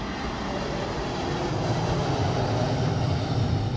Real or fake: real